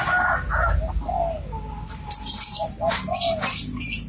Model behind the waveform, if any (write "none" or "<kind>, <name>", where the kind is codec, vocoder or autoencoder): none